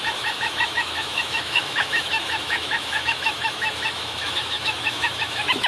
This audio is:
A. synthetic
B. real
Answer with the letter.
A